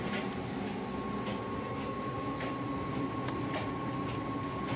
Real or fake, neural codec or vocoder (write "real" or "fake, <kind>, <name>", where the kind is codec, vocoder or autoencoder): real